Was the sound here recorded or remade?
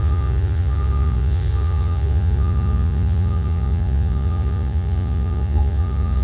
remade